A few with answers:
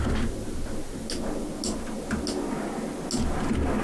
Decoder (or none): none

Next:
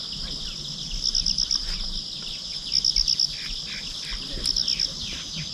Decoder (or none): none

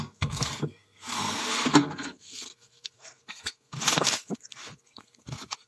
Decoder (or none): codec, SNAC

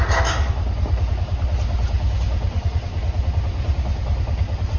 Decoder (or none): none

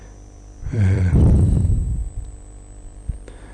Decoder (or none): vocoder, BigVGAN v2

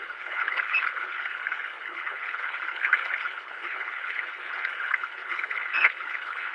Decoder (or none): codec, HILCodec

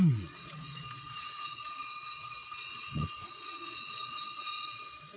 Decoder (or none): vocoder, Vocos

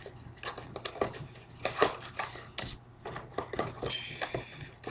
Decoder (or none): none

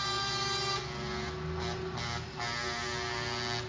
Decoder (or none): none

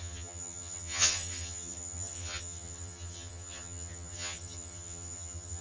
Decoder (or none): vocoder, HiFi-GAN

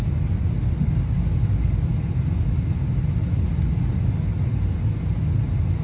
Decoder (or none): none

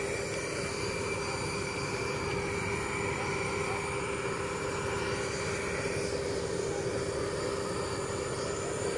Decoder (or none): none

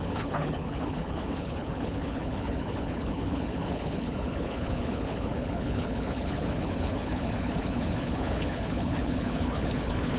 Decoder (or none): codec, HILCodec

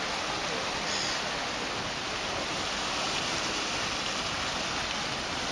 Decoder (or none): none